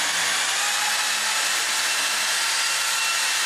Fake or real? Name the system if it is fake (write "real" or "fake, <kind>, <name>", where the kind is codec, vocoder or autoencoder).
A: real